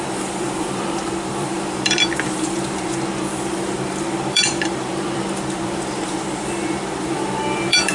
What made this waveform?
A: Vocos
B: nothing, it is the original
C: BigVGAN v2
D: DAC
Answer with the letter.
C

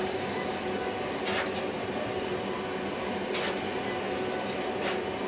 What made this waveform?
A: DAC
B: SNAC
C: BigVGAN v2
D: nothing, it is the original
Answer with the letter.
D